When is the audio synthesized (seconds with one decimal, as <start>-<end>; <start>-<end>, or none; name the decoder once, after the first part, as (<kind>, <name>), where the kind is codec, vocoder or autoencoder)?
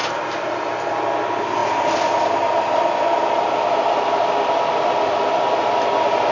0.0-0.9 (vocoder, BigVGAN v2)